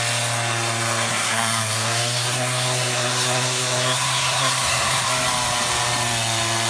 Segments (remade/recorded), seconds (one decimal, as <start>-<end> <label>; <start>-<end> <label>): 0.0-1.1 recorded; 1.1-5.1 remade; 5.1-6.7 recorded